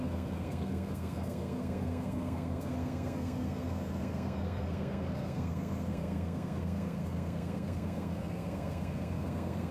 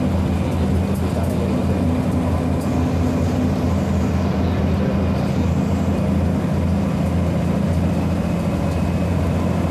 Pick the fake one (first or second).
first